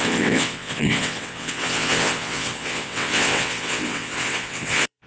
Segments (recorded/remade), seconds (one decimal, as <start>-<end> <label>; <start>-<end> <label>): 0.0-5.1 remade